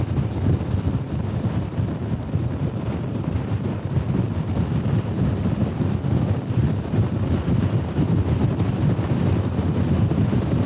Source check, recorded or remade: remade